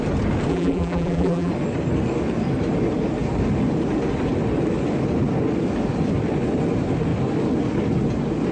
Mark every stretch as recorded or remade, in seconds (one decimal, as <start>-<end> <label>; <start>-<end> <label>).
0.0-0.5 recorded; 0.5-1.5 remade; 1.5-8.5 recorded